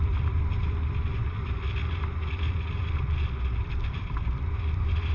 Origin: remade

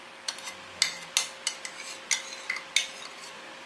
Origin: recorded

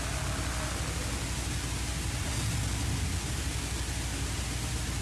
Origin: recorded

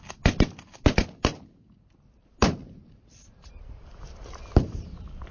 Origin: recorded